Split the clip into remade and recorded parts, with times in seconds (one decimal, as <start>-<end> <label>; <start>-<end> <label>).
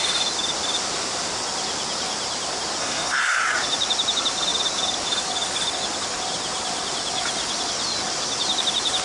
0.0-2.8 recorded; 2.8-3.4 remade; 3.4-9.0 recorded